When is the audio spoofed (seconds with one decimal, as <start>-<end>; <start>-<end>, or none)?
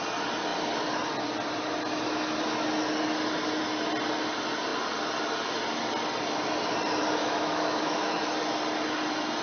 7.2-8.2